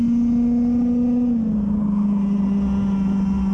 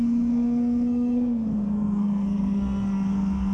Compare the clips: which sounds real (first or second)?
first